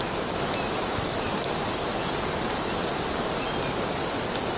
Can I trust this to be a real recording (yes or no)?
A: yes